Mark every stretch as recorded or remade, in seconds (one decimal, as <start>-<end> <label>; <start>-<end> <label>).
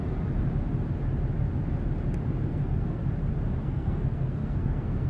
0.0-2.5 recorded; 2.5-3.0 remade; 3.0-3.6 recorded; 3.6-5.1 remade